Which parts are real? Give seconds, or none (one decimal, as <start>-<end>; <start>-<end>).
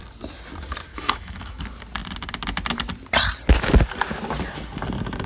0.0-0.9; 1.6-5.3